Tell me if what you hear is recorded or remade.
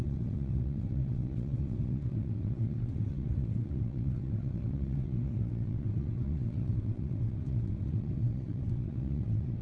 remade